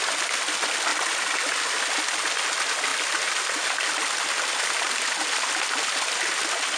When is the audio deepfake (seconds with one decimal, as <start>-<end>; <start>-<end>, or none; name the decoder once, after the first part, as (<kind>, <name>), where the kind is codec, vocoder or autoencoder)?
none